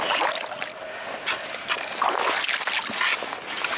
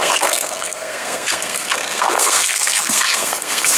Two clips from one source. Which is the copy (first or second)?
second